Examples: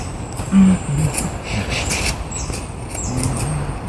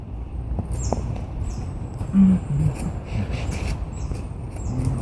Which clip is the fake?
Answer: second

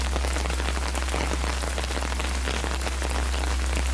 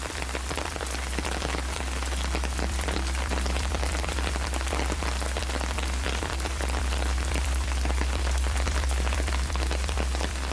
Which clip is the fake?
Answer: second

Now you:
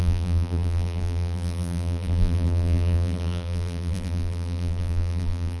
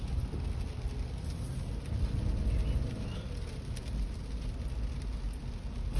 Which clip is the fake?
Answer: first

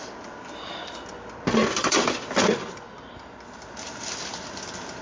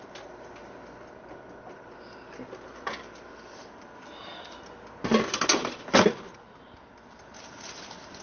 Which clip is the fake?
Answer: first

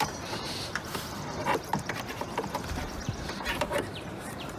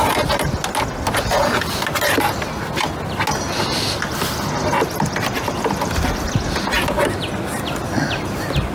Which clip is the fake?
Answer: first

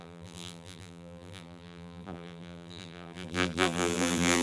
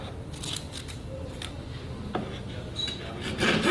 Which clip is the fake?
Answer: first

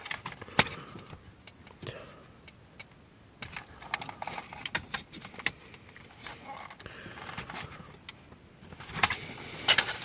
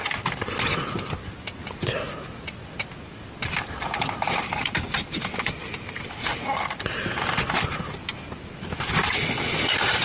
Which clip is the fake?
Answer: second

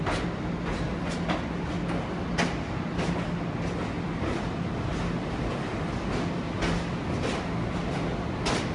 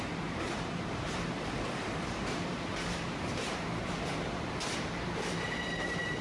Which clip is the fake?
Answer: second